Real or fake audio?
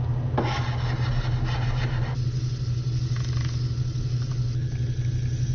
real